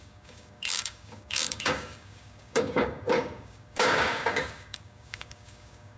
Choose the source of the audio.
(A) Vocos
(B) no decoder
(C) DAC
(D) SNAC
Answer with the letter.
C